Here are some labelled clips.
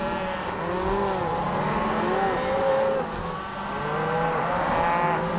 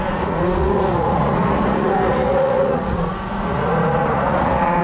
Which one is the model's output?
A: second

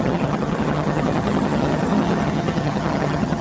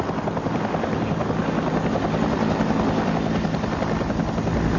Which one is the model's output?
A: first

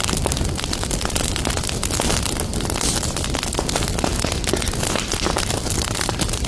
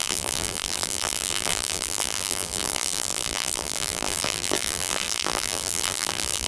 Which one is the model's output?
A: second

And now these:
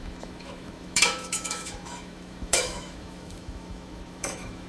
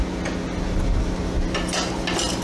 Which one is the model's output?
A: first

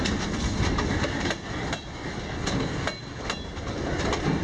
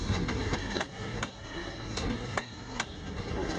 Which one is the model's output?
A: second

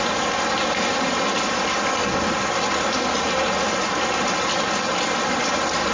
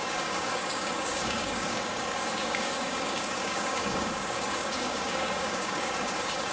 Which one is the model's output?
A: second